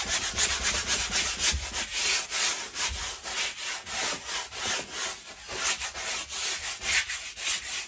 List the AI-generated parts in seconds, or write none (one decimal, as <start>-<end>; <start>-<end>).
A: none